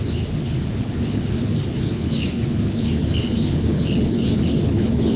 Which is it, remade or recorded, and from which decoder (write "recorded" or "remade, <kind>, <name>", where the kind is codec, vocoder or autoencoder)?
remade, codec, HILCodec